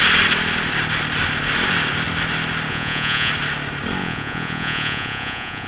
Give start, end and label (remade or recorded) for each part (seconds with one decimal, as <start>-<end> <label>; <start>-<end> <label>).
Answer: 0.0-2.7 recorded; 2.7-3.3 remade; 3.3-4.0 recorded; 4.0-5.7 remade